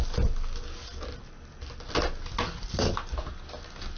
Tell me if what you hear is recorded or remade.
recorded